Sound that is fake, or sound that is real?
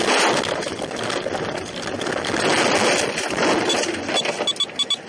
real